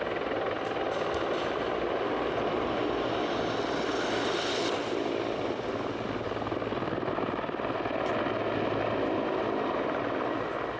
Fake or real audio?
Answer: real